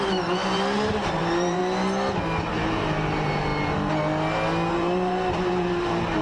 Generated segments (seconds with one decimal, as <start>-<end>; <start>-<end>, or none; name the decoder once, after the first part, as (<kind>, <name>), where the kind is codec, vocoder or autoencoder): 0.0-1.6 (vocoder, BigVGAN v2); 2.4-3.5; 4.7-6.2